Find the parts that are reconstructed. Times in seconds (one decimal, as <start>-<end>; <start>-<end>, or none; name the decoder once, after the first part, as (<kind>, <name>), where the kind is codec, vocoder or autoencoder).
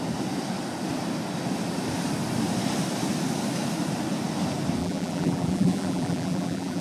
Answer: 4.8-6.8 (vocoder, BigVGAN v2)